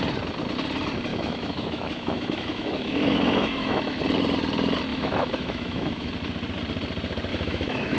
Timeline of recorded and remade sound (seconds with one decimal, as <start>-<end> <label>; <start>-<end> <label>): 0.0-1.1 recorded; 1.1-4.0 remade; 4.0-4.9 recorded; 4.9-6.1 remade; 6.1-7.3 recorded; 7.3-8.0 remade